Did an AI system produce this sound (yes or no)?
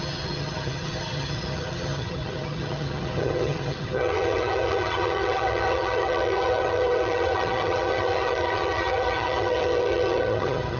yes